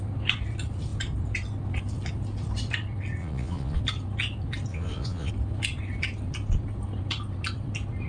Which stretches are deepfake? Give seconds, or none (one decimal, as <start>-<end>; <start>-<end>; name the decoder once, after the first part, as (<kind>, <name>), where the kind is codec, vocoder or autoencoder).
3.2-3.8 (vocoder, Vocos); 4.7-5.3

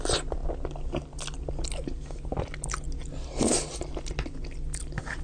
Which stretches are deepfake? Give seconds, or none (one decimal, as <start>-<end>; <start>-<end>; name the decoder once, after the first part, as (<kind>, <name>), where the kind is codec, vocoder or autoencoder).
none

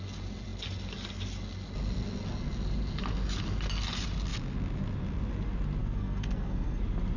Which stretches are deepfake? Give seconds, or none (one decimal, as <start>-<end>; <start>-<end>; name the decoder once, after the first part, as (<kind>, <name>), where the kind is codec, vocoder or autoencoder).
5.8-6.8 (codec, SNAC)

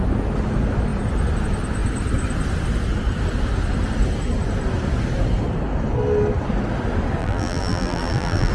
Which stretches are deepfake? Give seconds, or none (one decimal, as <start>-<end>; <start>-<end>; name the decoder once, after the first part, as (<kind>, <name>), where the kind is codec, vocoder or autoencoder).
7.2-8.5 (vocoder, BigVGAN v2)